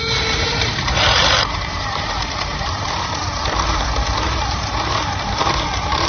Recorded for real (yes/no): no